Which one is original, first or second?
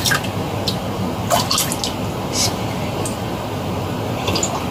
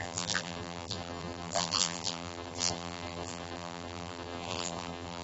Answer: first